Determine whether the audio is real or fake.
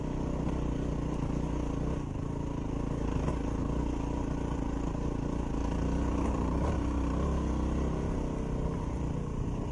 real